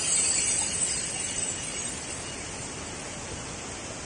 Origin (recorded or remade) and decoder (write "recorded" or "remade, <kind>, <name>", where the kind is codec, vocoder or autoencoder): recorded